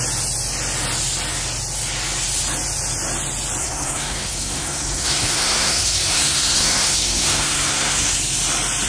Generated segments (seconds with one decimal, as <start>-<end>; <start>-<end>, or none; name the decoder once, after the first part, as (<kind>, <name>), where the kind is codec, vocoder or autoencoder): 3.6-8.2 (codec, SNAC)